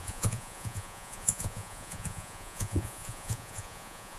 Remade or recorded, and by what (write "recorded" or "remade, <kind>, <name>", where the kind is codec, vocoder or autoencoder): remade, vocoder, Vocos